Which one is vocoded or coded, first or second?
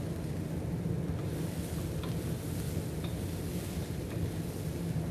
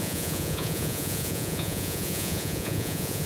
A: second